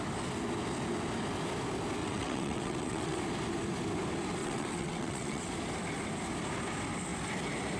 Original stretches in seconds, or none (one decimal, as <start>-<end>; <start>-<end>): 0.0-2.0; 3.2-4.4; 5.5-7.8